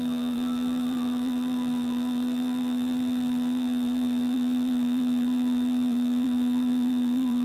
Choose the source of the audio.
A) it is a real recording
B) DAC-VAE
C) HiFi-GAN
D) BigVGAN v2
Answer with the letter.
D